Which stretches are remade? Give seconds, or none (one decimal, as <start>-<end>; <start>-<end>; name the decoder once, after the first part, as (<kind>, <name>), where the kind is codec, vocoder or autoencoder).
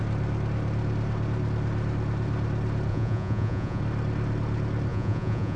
2.9-3.8 (vocoder, Vocos); 4.9-5.6